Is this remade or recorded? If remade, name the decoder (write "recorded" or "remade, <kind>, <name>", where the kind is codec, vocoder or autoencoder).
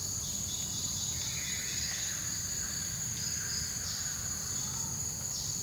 recorded